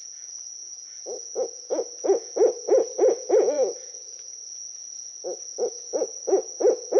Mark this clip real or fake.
fake